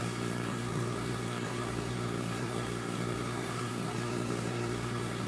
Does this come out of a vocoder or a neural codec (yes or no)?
yes